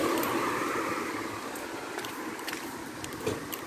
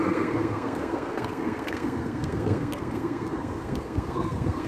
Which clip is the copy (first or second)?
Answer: second